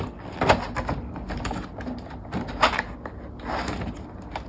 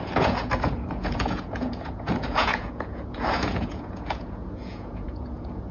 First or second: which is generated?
second